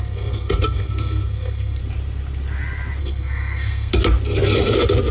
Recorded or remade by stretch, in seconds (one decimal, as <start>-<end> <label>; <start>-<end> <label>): 0.0-1.8 remade; 1.8-3.0 recorded; 3.0-3.9 remade; 3.9-5.1 recorded